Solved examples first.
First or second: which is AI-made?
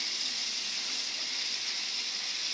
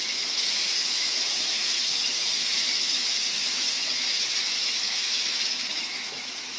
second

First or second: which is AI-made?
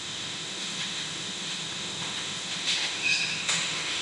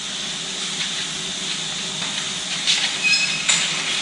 first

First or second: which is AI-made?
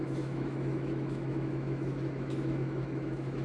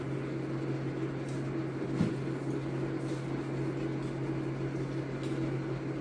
first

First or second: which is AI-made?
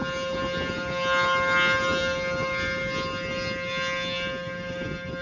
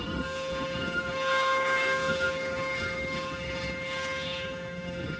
second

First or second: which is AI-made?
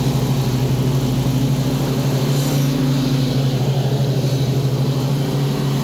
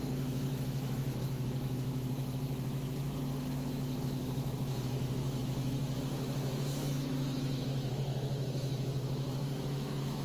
second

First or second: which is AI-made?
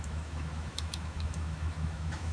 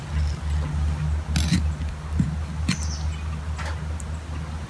first